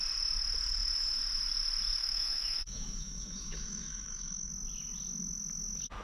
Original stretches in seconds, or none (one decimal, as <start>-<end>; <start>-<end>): 0.0-2.0; 4.5-6.0